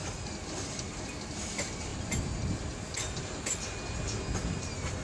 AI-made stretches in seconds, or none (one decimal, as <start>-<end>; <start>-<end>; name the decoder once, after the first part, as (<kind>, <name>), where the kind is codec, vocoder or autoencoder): none